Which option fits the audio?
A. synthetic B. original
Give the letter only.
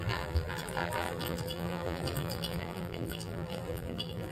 A